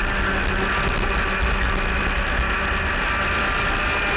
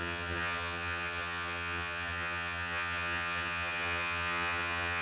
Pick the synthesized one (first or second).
second